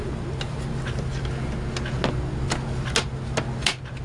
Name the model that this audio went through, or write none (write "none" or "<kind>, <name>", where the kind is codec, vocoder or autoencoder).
none